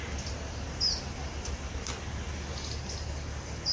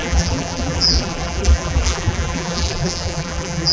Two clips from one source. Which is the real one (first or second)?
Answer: first